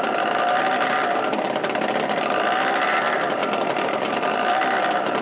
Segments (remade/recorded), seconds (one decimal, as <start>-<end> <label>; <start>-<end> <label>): 0.0-3.4 remade; 3.4-4.1 recorded; 4.1-5.2 remade